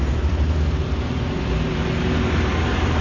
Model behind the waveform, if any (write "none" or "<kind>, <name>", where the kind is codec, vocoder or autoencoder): vocoder, BigVGAN v2